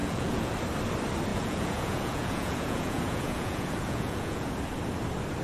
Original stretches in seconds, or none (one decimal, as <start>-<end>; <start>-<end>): 0.5-1.3; 4.5-5.4